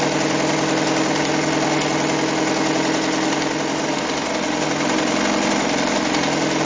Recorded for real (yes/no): yes